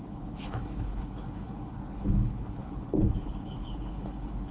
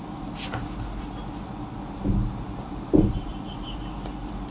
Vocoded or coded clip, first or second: first